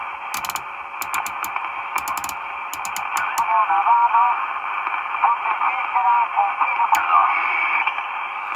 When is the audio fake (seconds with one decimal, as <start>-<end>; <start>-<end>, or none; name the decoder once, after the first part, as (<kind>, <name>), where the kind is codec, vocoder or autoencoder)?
none